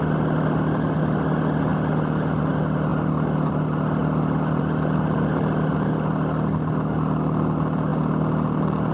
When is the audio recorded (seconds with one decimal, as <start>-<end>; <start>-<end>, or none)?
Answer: 0.0-8.9